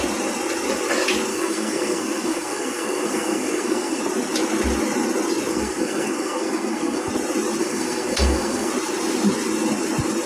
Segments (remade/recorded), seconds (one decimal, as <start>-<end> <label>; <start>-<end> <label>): 0.0-1.3 recorded; 1.3-4.0 remade; 4.0-5.5 recorded; 5.5-7.1 remade; 7.1-7.6 recorded; 7.6-8.7 remade; 8.7-10.3 recorded